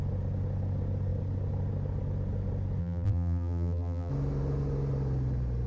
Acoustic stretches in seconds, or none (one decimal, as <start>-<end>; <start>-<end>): 0.0-2.8; 4.1-5.7